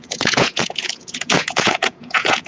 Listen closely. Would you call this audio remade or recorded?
remade